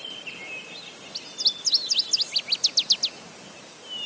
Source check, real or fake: real